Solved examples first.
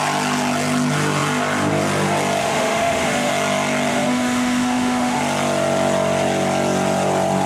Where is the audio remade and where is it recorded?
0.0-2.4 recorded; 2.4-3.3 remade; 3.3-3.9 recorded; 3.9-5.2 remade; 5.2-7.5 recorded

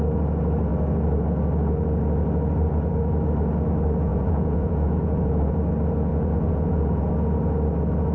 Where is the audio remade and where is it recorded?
0.0-4.1 recorded; 4.1-5.5 remade; 5.5-6.1 recorded; 6.1-7.0 remade; 7.0-8.1 recorded

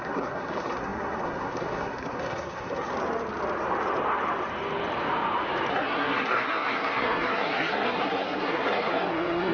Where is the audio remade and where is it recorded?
0.0-2.9 remade; 2.9-5.7 recorded; 5.7-9.5 remade

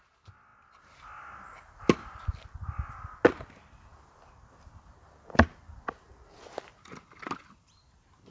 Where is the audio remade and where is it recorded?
0.0-8.3 recorded

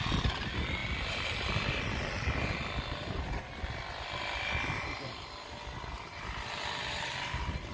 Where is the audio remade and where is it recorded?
0.0-7.7 recorded

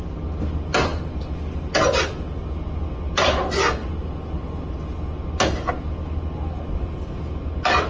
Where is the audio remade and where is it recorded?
0.0-7.9 recorded